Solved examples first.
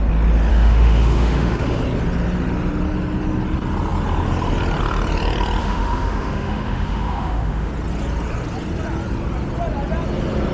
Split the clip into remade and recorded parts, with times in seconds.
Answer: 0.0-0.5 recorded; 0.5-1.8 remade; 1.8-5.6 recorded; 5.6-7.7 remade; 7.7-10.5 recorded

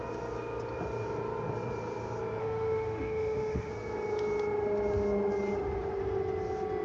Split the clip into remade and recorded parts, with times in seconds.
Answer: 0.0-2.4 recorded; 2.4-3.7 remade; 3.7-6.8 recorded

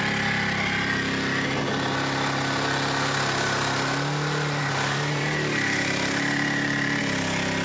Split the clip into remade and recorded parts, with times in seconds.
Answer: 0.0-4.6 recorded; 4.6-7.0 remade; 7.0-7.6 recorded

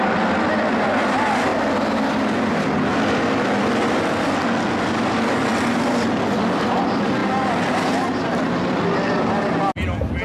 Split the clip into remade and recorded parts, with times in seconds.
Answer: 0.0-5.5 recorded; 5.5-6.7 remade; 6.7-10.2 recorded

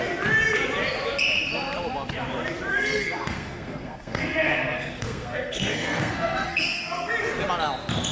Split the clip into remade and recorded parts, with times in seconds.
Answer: 0.0-2.7 recorded; 2.7-7.1 remade; 7.1-8.1 recorded

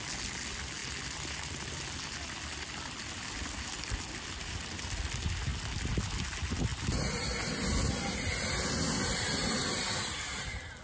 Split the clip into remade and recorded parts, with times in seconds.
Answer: 0.0-10.8 recorded

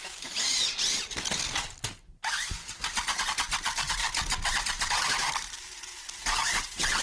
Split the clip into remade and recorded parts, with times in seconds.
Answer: 0.0-4.0 remade; 4.0-4.9 recorded; 4.9-7.0 remade

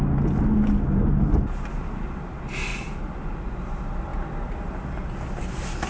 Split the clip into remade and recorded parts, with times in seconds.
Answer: 0.0-2.7 recorded; 2.7-3.4 remade; 3.4-5.9 recorded